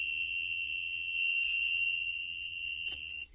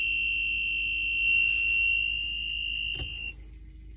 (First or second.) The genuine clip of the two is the second